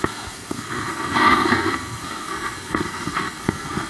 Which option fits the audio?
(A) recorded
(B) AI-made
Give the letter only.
B